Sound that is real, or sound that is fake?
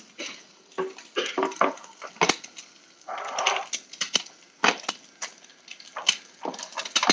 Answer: real